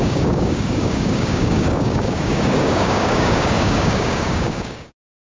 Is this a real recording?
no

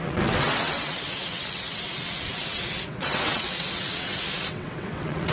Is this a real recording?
no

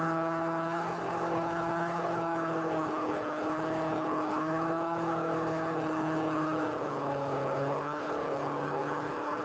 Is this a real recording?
no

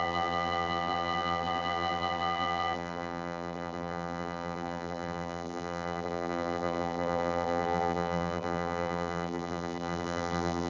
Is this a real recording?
no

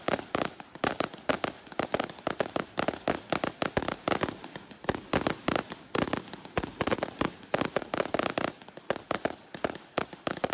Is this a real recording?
yes